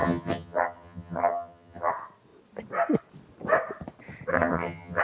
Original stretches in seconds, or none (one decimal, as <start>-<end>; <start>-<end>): 1.9-4.3